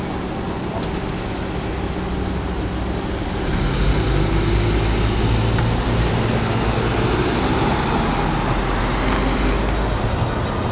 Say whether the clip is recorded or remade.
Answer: recorded